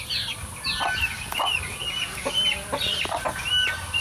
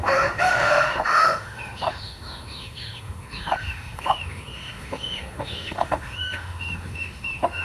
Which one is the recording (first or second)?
first